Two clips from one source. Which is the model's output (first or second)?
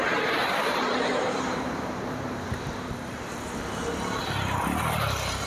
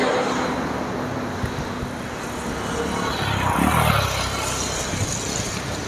first